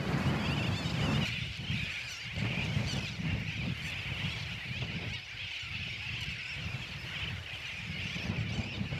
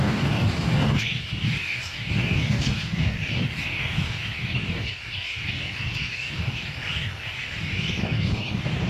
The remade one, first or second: second